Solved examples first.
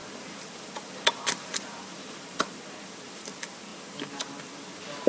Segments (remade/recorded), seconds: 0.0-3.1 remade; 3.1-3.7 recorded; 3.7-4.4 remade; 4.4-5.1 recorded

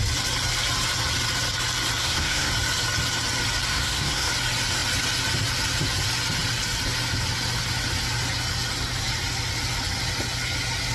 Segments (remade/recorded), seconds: 0.0-2.0 recorded; 2.0-2.5 remade; 2.5-3.7 recorded; 3.7-4.3 remade; 4.3-10.9 recorded

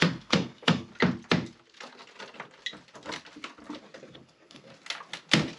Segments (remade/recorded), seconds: 0.0-0.9 remade; 0.9-4.0 recorded; 4.0-4.7 remade; 4.7-5.6 recorded